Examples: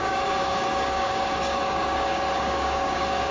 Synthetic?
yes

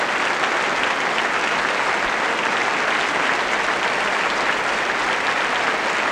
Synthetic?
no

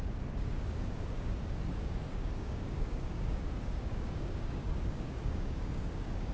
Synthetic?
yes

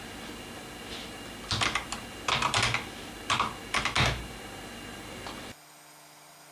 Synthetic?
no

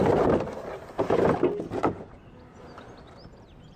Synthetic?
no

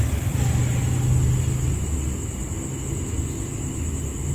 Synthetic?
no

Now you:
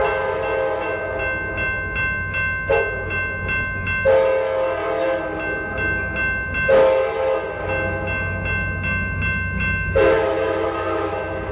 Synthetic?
no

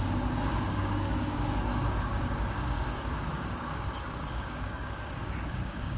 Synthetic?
yes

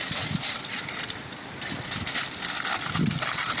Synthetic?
no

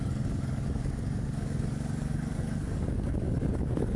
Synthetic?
yes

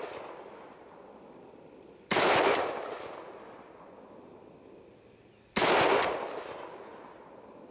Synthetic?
no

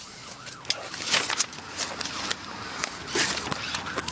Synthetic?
no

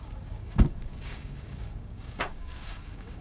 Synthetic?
yes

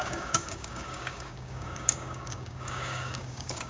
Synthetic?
yes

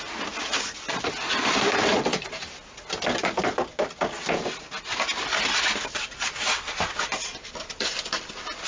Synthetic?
no